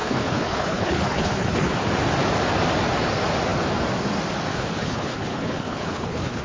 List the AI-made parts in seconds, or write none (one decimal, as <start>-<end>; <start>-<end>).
0.0-1.7; 4.5-6.4

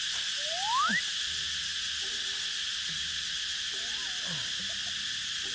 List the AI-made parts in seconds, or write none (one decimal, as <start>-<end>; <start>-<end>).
none